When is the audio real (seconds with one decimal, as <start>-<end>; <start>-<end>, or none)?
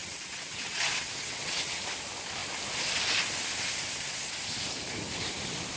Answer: 1.8-5.8